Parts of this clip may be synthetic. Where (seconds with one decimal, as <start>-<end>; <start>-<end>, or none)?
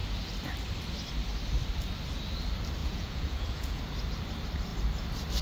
2.8-3.8